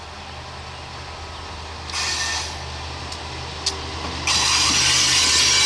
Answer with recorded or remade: recorded